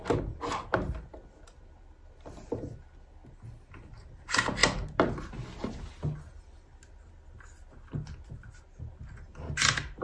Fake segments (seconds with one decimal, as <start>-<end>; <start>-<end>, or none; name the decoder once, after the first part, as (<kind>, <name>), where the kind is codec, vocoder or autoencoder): none